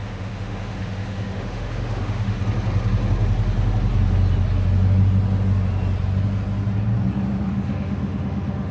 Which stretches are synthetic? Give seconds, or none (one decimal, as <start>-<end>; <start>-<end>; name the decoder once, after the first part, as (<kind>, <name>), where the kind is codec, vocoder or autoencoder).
0.0-2.4 (autoencoder, DAC-VAE); 7.5-8.7